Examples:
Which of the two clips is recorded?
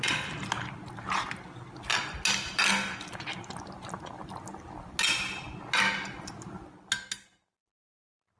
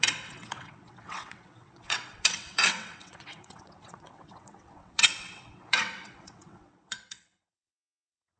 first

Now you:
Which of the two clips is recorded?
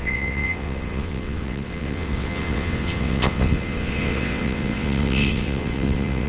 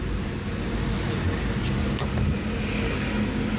second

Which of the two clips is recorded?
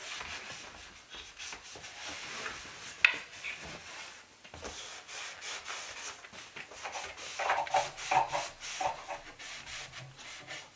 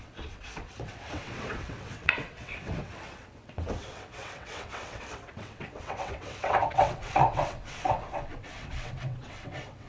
first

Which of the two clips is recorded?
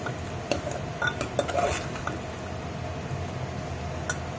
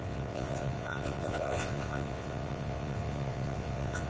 first